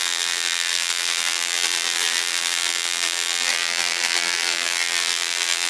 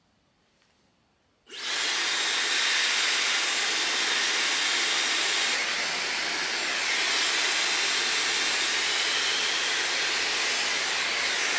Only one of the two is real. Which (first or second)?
second